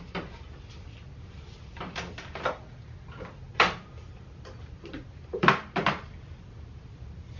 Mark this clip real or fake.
real